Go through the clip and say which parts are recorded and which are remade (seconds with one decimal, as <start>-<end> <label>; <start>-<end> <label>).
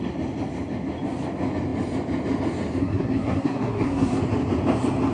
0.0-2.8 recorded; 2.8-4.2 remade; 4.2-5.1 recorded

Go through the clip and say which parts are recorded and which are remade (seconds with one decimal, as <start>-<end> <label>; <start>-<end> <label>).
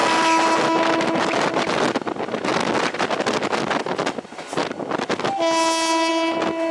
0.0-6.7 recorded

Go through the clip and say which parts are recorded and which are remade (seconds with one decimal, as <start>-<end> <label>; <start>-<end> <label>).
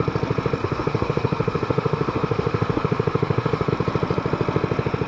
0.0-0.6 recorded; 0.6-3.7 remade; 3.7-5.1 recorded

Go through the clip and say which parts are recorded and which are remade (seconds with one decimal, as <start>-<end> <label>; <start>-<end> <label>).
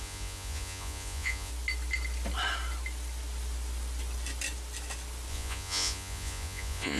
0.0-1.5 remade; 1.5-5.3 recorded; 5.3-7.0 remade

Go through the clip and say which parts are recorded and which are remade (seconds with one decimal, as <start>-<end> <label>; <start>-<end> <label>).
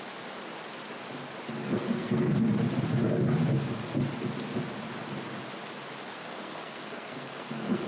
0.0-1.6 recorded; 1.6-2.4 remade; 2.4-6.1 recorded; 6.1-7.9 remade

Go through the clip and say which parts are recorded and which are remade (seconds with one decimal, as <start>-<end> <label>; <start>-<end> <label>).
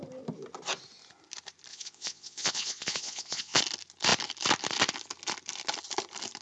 0.0-1.7 recorded; 1.7-3.6 remade; 3.6-6.4 recorded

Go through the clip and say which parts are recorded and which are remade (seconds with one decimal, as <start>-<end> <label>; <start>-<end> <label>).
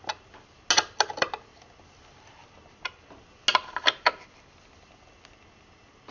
0.0-6.1 recorded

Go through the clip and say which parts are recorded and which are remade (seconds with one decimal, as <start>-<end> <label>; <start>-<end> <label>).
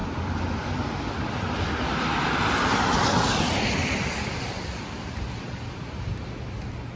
0.0-3.4 remade; 3.4-3.8 recorded; 3.8-5.8 remade; 5.8-7.0 recorded